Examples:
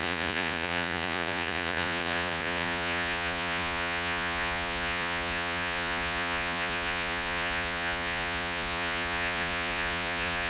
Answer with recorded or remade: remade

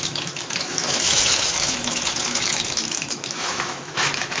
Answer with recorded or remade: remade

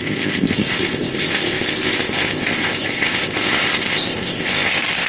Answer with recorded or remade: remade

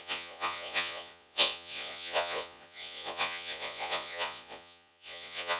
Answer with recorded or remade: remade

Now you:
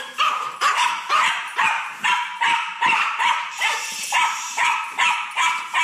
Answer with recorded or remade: remade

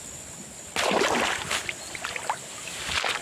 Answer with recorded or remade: recorded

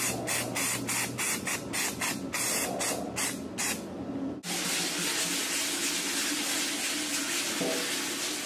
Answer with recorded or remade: recorded